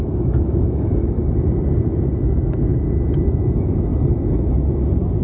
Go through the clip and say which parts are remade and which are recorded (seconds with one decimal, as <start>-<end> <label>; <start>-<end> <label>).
0.0-1.2 remade; 1.2-1.8 recorded; 1.8-2.7 remade; 2.7-3.2 recorded; 3.2-3.9 remade; 3.9-5.2 recorded